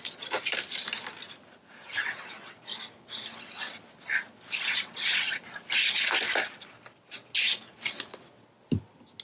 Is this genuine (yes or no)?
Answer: yes